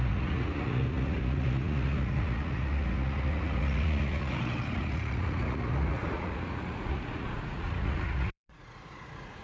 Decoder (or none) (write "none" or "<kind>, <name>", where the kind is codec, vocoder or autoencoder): vocoder, Vocos